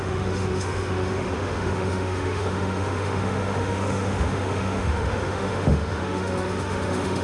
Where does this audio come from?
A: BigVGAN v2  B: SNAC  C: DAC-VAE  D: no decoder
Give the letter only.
C